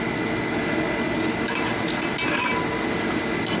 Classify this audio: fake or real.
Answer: real